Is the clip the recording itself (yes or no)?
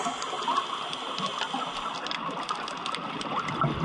yes